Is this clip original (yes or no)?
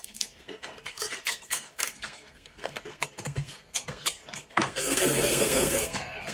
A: no